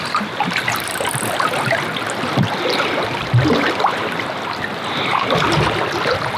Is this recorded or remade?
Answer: recorded